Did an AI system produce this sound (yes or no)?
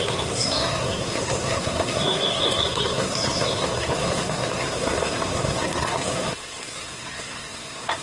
yes